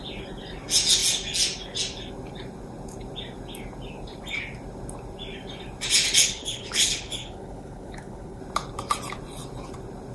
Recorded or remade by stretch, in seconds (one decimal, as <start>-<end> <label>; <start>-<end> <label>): 0.0-6.2 recorded; 6.2-8.4 remade; 8.4-10.1 recorded